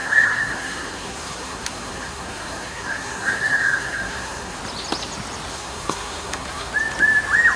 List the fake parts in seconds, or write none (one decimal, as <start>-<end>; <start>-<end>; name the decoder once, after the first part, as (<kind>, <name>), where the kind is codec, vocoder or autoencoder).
0.0-4.6 (codec, SNAC); 5.5-6.7

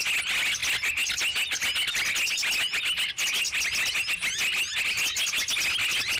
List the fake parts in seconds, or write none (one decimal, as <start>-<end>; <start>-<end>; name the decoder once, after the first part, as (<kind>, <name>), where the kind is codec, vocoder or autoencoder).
none

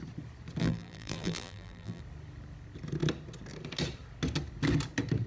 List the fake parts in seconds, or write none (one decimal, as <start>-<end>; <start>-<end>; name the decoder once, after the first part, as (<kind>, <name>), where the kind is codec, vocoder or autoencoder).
0.6-2.0 (vocoder, BigVGAN v2)

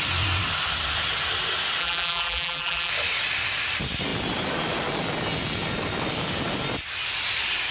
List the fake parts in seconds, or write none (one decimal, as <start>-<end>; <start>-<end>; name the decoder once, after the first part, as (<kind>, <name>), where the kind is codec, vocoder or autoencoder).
1.8-2.9 (vocoder, BigVGAN v2)